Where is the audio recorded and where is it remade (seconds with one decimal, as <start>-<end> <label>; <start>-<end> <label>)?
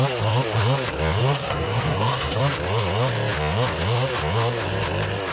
0.0-1.2 recorded; 1.2-2.4 remade; 2.4-5.3 recorded